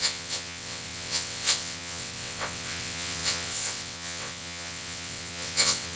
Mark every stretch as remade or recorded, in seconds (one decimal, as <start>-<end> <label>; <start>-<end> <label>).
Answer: 0.0-6.0 remade